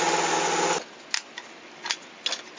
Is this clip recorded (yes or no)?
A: yes